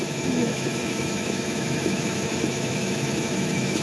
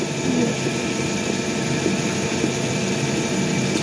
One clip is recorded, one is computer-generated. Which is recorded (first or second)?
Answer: second